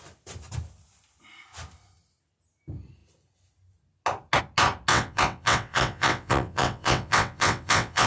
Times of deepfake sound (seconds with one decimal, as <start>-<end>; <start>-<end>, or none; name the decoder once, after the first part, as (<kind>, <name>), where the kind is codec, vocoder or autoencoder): 4.9-8.1 (vocoder, WaveNeXt)